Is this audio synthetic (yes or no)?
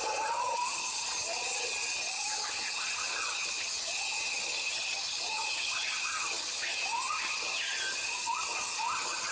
yes